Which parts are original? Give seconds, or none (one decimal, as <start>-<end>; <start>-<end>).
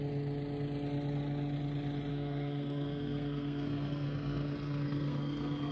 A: 0.0-2.1